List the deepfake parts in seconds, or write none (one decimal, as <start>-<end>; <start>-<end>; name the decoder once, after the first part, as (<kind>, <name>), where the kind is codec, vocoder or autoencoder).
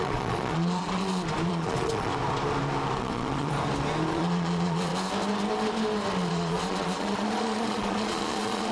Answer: 0.0-1.0 (vocoder, Vocos); 1.5-2.1; 3.0-3.5; 4.1-4.9; 6.3-8.7